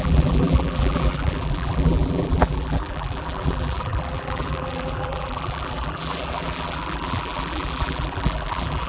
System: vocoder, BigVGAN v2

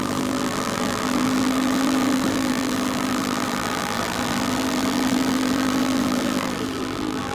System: vocoder, BigVGAN v2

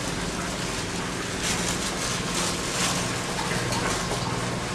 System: none